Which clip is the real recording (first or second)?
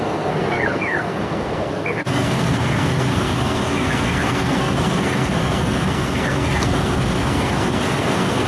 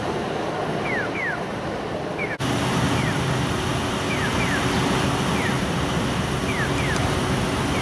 second